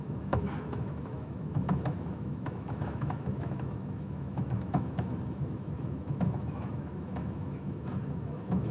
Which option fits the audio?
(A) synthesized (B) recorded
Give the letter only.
A